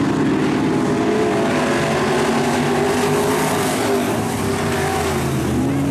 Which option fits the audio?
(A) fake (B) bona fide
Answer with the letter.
B